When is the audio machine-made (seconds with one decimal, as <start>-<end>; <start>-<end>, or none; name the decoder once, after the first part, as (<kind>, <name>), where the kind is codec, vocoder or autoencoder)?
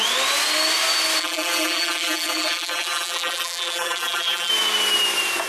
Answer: 1.2-4.5 (vocoder, BigVGAN v2)